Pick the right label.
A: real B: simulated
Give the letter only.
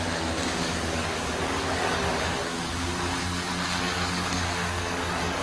B